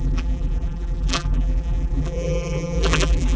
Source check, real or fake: fake